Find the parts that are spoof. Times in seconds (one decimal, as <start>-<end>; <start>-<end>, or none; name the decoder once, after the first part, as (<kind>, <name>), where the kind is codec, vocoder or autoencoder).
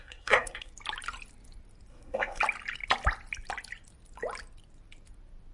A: 0.0-0.7 (codec, SNAC); 1.9-2.4